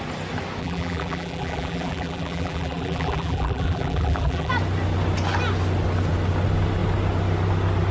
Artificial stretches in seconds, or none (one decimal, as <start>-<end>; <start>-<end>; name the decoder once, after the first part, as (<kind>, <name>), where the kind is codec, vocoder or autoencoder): 0.6-4.5 (vocoder, BigVGAN v2)